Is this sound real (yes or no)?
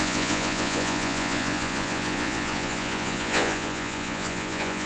no